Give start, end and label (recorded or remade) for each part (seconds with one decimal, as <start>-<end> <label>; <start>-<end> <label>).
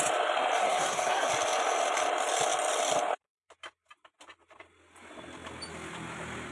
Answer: 0.0-0.6 recorded; 0.6-1.3 remade; 1.3-6.5 recorded